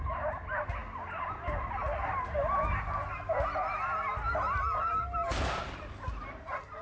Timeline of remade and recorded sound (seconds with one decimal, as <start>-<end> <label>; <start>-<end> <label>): 0.0-6.8 recorded